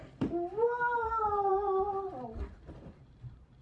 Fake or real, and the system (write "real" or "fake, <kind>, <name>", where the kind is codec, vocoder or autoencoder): fake, vocoder, BigVGAN v2